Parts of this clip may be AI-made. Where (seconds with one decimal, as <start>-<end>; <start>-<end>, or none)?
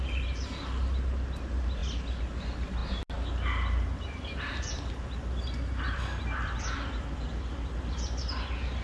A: none